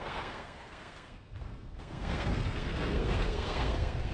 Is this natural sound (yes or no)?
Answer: no